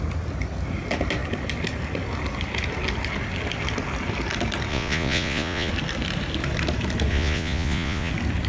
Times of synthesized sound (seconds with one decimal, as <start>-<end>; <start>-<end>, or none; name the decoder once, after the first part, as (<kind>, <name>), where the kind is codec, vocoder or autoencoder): 4.7-5.7 (vocoder, Vocos); 7.1-8.1